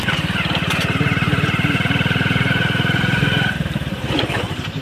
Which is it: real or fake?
fake